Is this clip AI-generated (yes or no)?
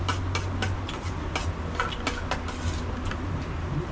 no